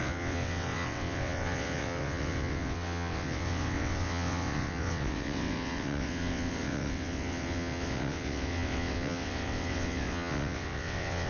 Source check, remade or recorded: remade